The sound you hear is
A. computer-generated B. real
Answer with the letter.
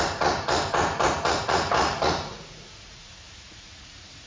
A